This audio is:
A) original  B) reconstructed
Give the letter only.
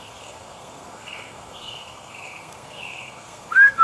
B